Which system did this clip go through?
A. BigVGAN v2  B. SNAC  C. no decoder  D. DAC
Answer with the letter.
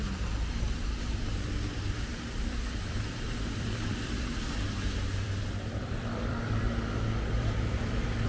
A